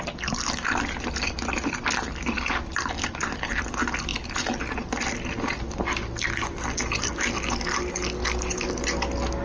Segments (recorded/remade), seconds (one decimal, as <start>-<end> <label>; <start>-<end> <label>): 0.0-9.4 recorded